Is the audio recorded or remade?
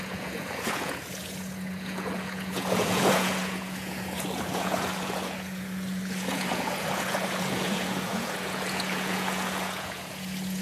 remade